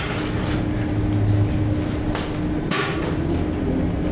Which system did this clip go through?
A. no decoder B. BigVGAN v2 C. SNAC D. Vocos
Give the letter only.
A